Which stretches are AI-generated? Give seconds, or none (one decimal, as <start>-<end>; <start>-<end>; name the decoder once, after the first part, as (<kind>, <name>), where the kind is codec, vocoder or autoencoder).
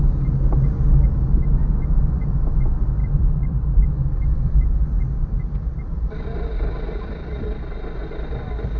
3.0-6.7 (vocoder, BigVGAN v2)